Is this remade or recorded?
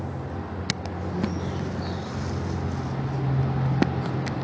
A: recorded